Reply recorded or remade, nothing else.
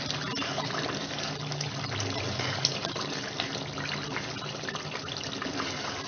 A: recorded